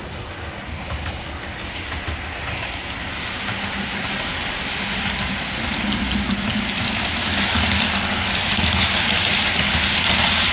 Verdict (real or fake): real